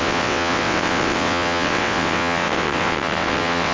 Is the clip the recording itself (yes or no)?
no